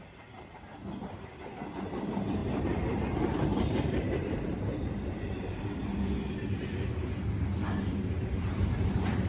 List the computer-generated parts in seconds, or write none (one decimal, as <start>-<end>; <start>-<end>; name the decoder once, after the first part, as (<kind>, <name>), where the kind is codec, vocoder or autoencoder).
1.0-5.8 (vocoder, BigVGAN v2); 7.8-9.3